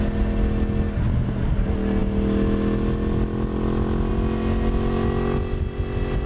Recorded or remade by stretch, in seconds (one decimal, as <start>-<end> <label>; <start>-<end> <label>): 0.0-6.3 recorded